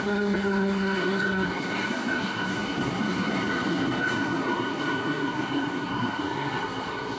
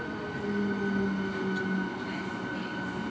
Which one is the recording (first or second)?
second